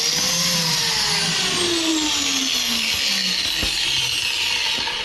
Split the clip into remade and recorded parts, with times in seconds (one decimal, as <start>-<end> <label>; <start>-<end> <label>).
0.0-5.0 recorded